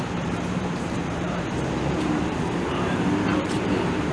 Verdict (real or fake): fake